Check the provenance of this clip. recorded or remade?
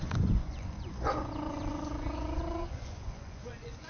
remade